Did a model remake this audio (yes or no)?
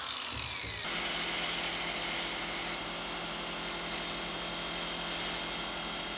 no